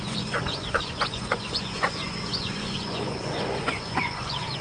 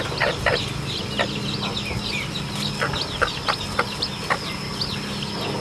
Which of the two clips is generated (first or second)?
first